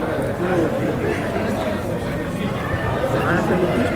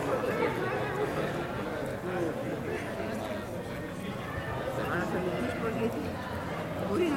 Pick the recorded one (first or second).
second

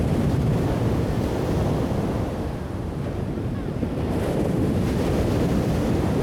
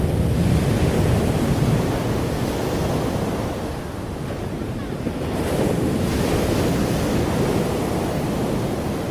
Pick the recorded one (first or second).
second